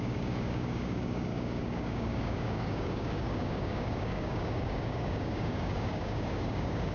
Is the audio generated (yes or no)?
yes